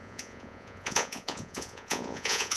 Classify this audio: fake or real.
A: fake